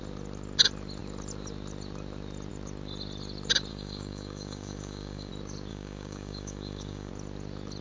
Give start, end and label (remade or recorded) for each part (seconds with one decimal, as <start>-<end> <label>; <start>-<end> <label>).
0.0-3.7 recorded; 3.7-5.3 remade; 5.3-5.7 recorded; 5.7-7.1 remade; 7.1-7.8 recorded